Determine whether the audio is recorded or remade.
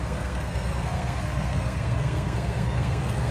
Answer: remade